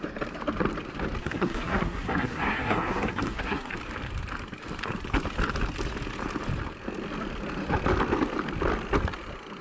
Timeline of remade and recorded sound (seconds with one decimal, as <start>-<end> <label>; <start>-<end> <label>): 0.0-1.2 recorded; 1.2-3.7 remade; 3.7-9.6 recorded